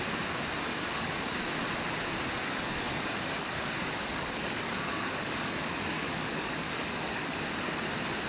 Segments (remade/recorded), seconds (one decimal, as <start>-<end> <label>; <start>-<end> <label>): 0.0-0.7 recorded; 0.7-1.5 remade; 1.5-2.4 recorded; 2.4-7.4 remade; 7.4-8.3 recorded